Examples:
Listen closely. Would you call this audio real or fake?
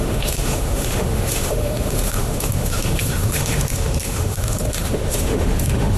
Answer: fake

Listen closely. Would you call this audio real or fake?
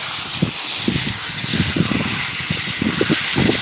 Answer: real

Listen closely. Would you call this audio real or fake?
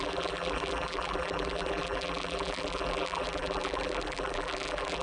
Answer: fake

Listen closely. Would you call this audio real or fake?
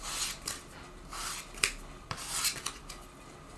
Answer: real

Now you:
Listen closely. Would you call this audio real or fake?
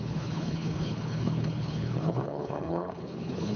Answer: fake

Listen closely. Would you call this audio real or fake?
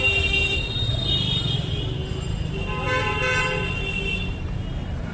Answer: real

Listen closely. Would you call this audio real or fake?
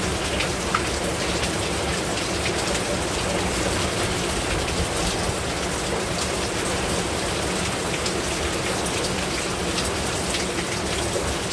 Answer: real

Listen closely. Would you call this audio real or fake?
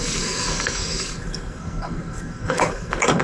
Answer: fake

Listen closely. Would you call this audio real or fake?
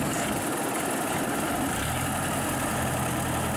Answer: real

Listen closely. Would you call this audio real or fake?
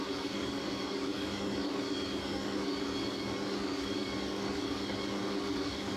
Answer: fake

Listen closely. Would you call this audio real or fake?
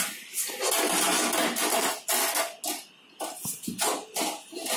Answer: real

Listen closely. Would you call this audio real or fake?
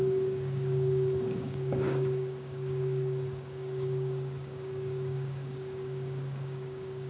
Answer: fake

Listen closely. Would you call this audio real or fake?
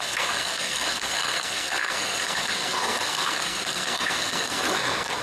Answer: fake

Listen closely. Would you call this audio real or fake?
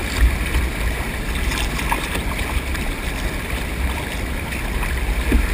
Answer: real